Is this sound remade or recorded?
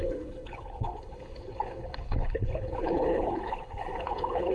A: remade